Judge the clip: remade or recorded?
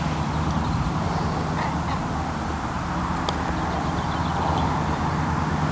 recorded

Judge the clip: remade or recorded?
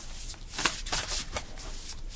remade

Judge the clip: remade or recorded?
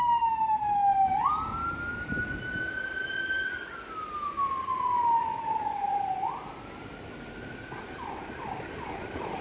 recorded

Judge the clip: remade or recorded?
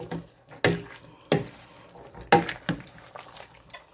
recorded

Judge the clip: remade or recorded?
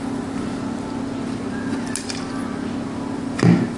recorded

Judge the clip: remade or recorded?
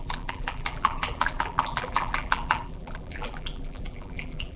remade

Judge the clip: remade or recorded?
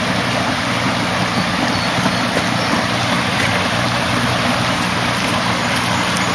recorded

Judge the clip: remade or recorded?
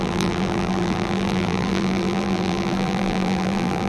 remade